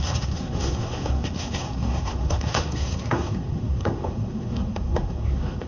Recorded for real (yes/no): no